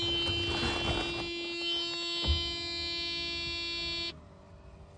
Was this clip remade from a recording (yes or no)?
no